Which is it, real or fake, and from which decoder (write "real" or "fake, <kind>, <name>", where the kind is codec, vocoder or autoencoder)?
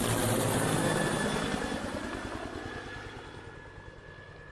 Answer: real